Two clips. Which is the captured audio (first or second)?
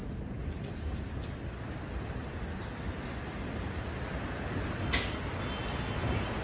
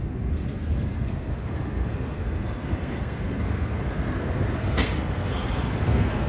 first